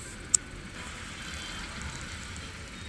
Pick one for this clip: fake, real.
real